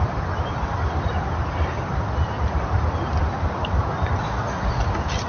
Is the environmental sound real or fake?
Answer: real